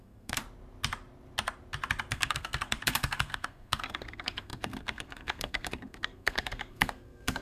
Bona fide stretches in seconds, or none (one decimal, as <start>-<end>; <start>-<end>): 0.4-2.1